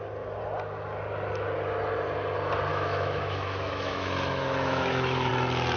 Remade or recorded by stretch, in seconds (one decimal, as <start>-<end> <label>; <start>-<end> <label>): 0.0-2.7 recorded; 2.7-5.3 remade; 5.3-5.8 recorded

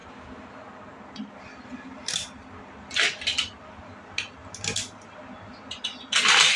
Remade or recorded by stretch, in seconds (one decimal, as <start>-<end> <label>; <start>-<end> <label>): 0.0-6.6 recorded

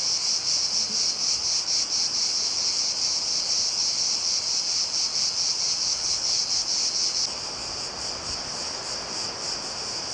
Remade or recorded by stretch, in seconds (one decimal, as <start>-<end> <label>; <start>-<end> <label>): 0.0-5.9 recorded; 5.9-6.4 remade; 6.4-10.1 recorded

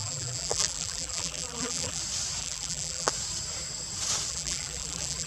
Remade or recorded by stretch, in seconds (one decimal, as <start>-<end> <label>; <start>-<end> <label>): 0.0-2.0 remade; 2.0-2.4 recorded; 2.4-3.1 remade; 3.1-4.3 recorded; 4.3-5.3 remade

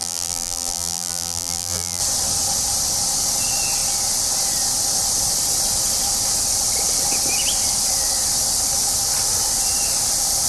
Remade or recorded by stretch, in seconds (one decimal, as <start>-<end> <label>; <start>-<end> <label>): 0.0-2.0 remade; 2.0-10.5 recorded